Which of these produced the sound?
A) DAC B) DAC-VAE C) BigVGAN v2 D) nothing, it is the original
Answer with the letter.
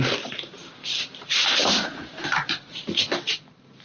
C